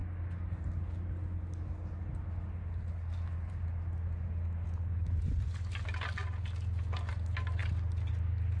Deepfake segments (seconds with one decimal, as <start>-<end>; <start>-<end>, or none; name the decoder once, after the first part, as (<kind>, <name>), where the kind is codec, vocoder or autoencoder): none